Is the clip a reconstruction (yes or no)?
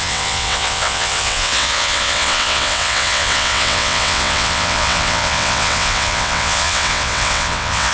yes